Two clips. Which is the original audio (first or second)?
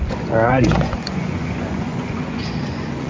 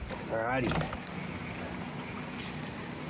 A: second